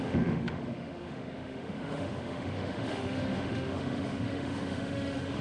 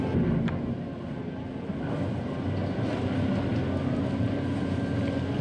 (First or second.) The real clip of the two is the second